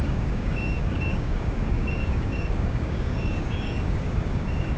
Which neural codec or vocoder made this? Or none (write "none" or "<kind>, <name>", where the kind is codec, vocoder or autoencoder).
codec, DAC